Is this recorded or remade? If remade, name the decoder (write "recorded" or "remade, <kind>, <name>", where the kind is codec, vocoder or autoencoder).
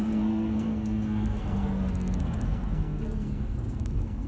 remade, codec, SNAC